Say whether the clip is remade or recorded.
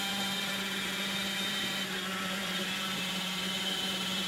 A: remade